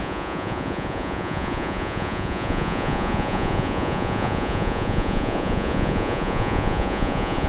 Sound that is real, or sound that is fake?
fake